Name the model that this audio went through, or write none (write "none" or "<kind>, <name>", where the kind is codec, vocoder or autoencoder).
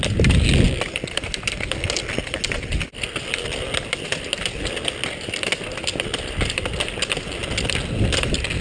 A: none